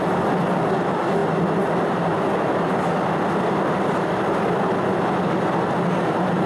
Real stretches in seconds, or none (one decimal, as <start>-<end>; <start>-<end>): 0.0-6.5